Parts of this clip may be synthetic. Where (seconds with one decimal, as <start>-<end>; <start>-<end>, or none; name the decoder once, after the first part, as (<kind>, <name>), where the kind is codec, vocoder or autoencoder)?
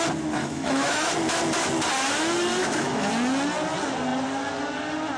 0.4-1.1 (autoencoder, DAC-VAE); 2.5-3.1